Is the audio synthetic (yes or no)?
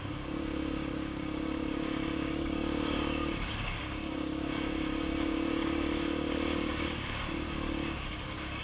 yes